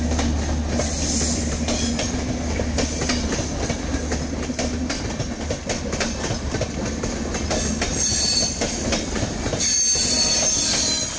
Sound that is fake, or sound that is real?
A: real